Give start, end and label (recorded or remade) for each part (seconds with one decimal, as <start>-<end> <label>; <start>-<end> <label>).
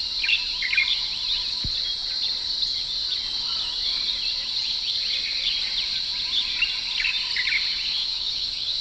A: 0.0-8.0 recorded; 8.0-8.8 remade